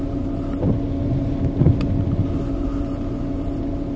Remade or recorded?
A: recorded